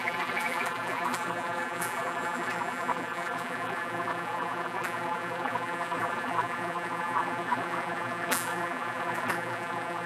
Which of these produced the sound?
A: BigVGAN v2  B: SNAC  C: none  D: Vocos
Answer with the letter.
A